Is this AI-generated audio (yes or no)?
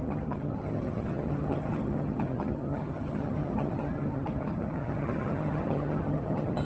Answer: yes